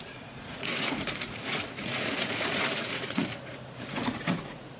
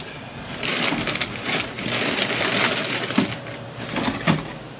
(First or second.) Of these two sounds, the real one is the second